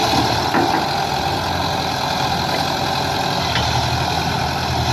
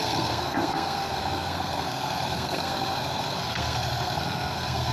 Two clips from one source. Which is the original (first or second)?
first